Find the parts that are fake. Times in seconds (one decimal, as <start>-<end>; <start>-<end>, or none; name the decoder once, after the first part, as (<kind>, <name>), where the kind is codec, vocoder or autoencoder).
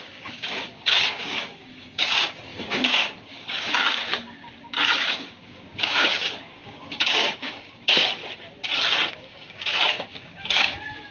0.0-8.2 (codec, DAC); 9.1-11.1